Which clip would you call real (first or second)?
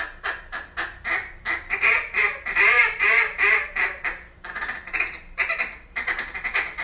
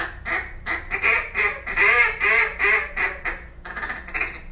second